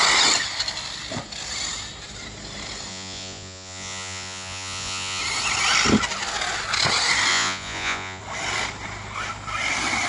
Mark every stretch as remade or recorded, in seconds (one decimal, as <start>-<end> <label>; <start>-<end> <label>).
0.0-2.9 recorded; 2.9-5.2 remade; 5.2-7.3 recorded; 7.3-8.2 remade; 8.2-10.1 recorded